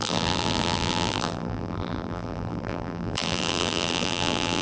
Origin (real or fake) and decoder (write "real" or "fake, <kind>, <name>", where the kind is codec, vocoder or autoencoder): fake, vocoder, BigVGAN v2